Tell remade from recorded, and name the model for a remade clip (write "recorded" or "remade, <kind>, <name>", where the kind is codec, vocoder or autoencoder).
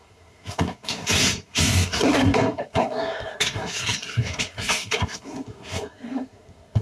remade, codec, SNAC